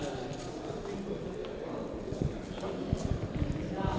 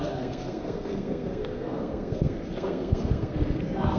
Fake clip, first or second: second